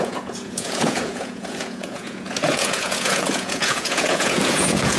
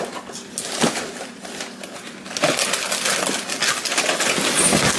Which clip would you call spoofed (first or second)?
first